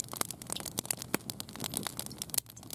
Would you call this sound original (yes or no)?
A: yes